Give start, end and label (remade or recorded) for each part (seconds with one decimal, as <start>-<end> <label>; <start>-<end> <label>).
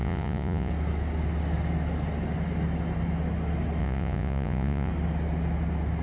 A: 0.0-0.7 remade; 0.7-3.8 recorded; 3.8-4.9 remade; 4.9-6.0 recorded